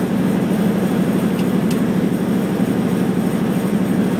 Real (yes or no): yes